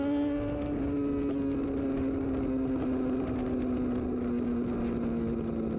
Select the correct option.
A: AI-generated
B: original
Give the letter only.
B